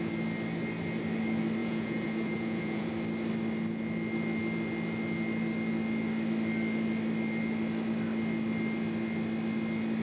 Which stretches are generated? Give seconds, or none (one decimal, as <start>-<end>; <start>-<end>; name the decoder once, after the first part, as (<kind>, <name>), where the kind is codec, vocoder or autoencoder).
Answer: 1.6-2.9 (vocoder, Vocos)